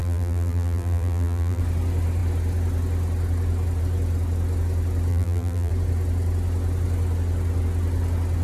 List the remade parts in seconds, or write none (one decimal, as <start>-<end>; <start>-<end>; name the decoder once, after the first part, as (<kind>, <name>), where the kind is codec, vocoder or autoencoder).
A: 0.0-1.6 (vocoder, BigVGAN v2); 5.1-5.7